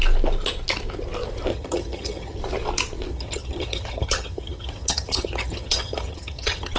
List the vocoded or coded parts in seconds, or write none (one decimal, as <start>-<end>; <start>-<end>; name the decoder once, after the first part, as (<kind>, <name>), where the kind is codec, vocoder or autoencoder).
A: 1.5-2.4 (vocoder, HiFi-GAN); 3.1-6.8